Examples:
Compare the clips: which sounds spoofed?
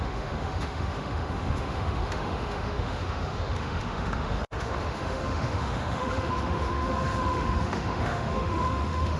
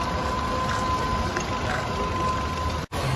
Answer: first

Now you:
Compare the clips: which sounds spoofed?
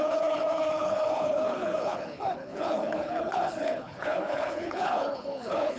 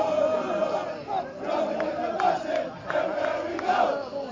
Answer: first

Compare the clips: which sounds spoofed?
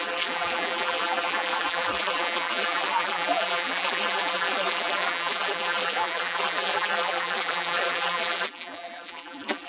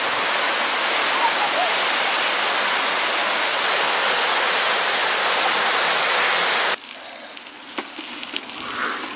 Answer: first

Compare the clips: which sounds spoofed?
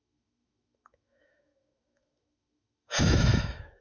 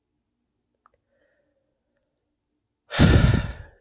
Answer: first